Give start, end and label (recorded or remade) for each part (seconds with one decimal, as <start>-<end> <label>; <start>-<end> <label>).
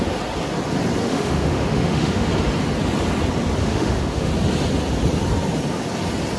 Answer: 0.0-1.0 recorded; 1.0-2.3 remade; 2.3-3.6 recorded; 3.6-4.3 remade; 4.3-6.4 recorded